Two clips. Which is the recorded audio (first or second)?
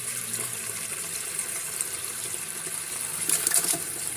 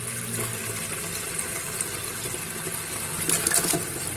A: second